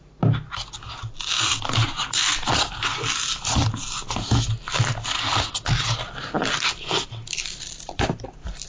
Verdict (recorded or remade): recorded